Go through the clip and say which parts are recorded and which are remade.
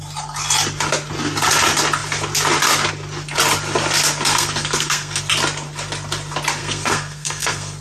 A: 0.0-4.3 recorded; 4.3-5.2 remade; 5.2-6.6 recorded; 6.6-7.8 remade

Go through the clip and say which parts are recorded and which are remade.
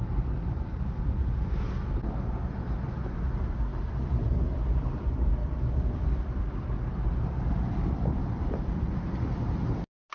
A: 0.0-5.4 recorded; 5.4-6.1 remade; 6.1-8.2 recorded; 8.2-8.9 remade; 8.9-10.1 recorded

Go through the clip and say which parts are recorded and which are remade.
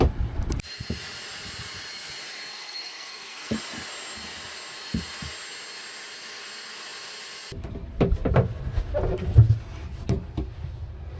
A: 0.0-2.5 recorded; 2.5-3.5 remade; 3.5-11.2 recorded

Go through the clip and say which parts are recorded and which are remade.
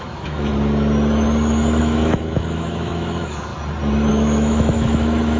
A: 0.0-0.5 remade; 0.5-1.8 recorded; 1.8-3.5 remade; 3.5-4.1 recorded; 4.1-5.4 remade